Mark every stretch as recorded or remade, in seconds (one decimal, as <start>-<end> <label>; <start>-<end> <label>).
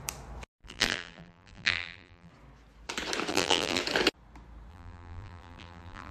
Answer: 0.0-0.6 recorded; 0.6-2.3 remade; 2.3-3.3 recorded; 3.3-3.8 remade; 3.8-4.7 recorded; 4.7-6.1 remade